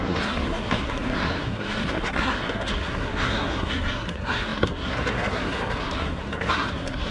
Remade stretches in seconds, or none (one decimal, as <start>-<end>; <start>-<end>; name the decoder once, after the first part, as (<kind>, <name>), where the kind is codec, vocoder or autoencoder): 0.0-7.1 (codec, SNAC)